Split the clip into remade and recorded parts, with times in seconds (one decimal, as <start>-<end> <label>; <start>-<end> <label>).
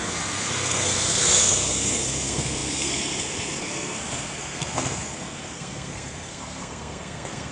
0.0-7.5 remade